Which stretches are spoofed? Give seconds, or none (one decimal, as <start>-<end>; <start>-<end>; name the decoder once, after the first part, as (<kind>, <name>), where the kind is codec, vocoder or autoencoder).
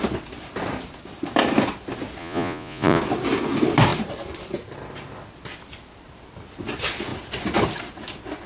2.2-3.0 (vocoder, Vocos)